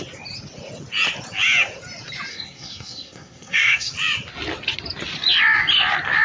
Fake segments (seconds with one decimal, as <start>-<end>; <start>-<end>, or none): 2.3-3.9

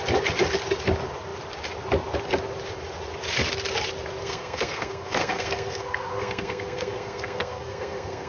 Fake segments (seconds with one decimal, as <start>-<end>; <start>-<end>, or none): 4.2-8.3

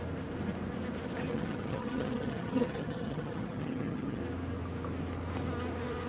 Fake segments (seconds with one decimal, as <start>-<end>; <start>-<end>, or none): 1.3-4.2

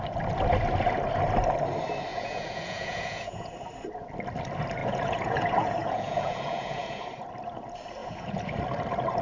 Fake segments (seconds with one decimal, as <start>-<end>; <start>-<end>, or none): 2.1-3.5; 4.8-7.0; 8.0-8.6

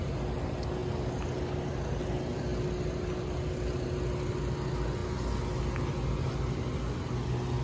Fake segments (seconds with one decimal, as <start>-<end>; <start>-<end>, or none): none